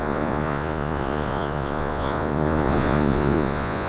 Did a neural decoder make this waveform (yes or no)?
yes